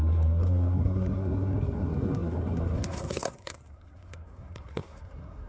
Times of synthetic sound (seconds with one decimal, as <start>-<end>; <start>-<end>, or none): 0.0-5.5